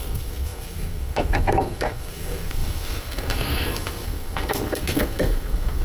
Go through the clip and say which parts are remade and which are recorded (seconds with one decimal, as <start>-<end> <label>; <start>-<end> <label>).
0.0-5.8 remade